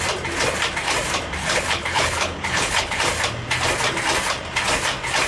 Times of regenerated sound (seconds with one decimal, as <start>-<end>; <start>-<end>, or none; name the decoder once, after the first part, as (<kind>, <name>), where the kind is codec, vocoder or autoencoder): 1.4-3.0 (codec, HILCodec)